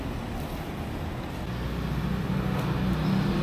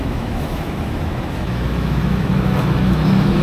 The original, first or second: first